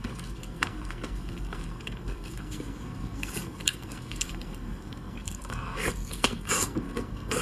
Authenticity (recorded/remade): remade